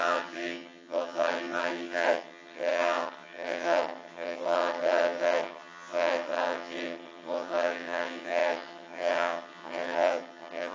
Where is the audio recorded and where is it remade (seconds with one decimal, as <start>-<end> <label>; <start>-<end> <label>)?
0.0-10.7 remade